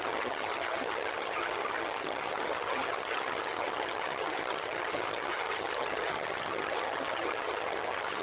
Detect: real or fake fake